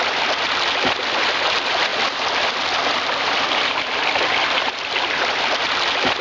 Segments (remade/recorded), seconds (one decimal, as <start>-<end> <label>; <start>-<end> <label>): 0.0-6.2 recorded